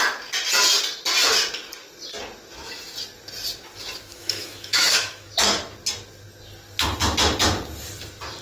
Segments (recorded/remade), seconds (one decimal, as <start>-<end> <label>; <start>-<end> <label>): 0.0-4.1 recorded; 4.1-5.3 remade; 5.3-8.4 recorded